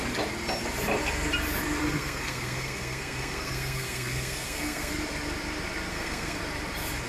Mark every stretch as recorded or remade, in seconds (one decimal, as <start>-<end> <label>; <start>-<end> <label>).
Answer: 0.0-1.8 recorded; 1.8-4.9 remade; 4.9-5.9 recorded; 5.9-6.4 remade; 6.4-7.1 recorded

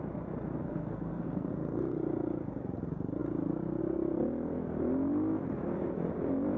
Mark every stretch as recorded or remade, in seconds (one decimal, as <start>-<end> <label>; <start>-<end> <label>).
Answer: 0.0-0.6 recorded; 0.6-1.5 remade; 1.5-6.6 recorded

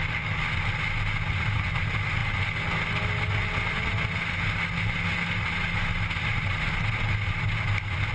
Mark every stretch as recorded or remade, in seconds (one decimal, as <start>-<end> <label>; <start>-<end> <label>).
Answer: 0.0-8.1 recorded